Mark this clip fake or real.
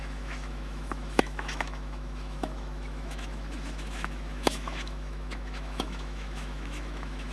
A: fake